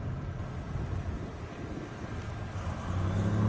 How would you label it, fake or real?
real